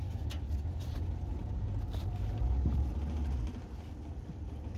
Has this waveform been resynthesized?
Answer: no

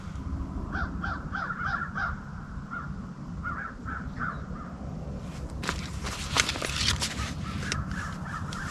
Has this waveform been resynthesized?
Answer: no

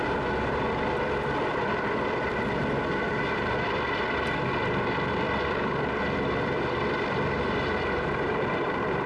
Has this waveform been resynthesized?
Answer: yes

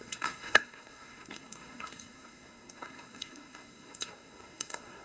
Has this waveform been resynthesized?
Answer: yes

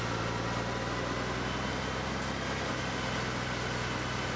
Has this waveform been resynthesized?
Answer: no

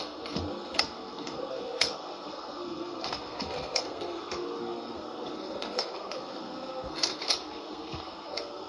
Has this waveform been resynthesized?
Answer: yes